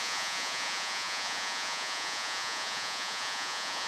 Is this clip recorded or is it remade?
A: remade